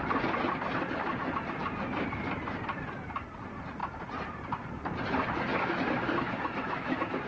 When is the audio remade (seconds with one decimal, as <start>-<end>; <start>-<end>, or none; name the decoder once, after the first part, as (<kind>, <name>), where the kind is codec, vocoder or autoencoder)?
5.5-7.3 (autoencoder, DAC-VAE)